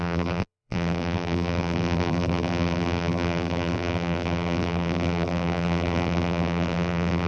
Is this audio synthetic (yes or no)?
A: yes